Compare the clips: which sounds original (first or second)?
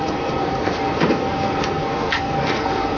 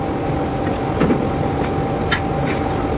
second